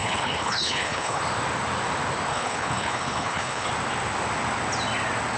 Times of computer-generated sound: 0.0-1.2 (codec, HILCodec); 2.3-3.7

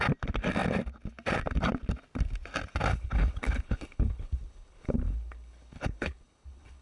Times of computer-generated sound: 2.9-6.8 (codec, HILCodec)